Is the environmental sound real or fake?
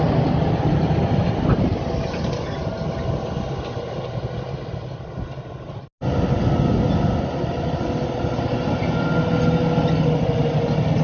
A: real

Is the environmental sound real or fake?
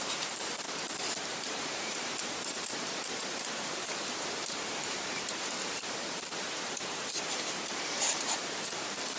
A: fake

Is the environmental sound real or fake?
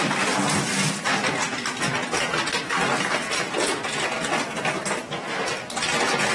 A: real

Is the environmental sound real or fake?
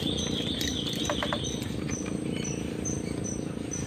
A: fake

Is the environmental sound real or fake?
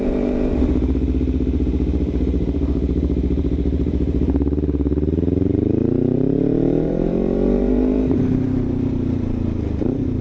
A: fake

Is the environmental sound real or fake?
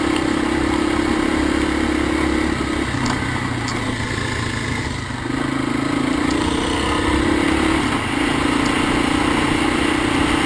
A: real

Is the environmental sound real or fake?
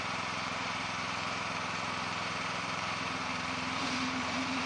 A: fake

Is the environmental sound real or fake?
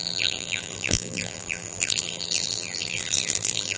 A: fake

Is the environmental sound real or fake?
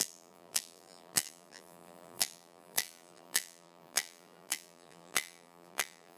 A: fake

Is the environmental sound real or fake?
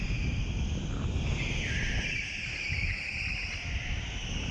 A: real